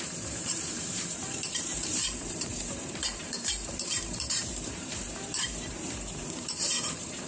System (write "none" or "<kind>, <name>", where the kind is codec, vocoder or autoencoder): vocoder, BigVGAN v2